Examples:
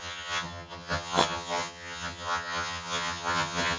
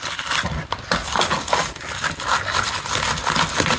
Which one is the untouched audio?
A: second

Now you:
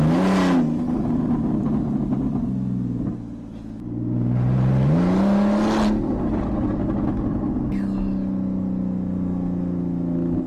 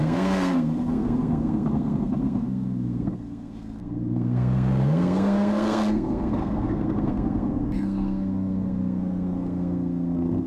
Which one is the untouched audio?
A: first